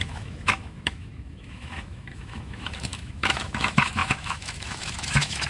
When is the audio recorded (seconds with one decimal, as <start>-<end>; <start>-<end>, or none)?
none